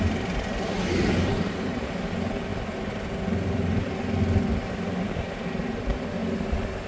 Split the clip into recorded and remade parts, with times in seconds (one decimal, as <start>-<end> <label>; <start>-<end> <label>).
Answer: 0.0-6.9 recorded